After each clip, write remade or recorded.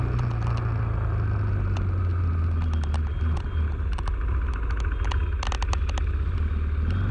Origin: recorded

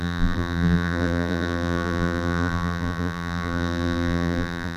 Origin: remade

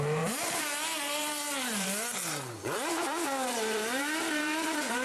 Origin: remade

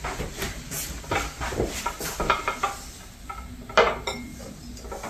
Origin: recorded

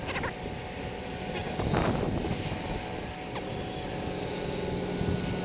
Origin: recorded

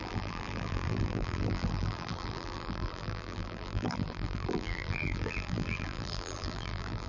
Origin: remade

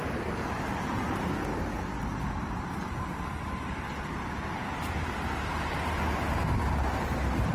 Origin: remade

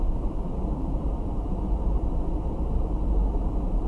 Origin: recorded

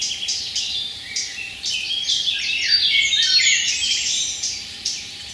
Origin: remade